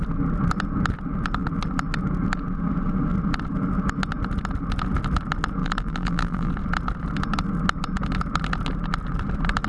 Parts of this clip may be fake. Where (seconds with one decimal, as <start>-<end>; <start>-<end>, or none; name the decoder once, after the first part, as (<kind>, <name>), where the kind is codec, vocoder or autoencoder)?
5.6-6.5 (vocoder, BigVGAN v2)